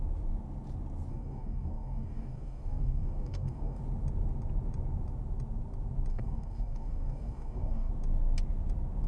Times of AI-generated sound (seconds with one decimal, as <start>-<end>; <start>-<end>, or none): 1.1-3.8; 6.1-7.9